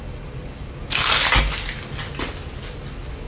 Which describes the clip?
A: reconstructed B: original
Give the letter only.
B